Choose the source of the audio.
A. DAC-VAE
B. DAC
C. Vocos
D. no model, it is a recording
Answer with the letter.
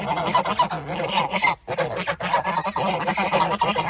D